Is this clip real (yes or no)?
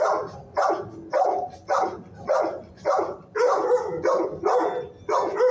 yes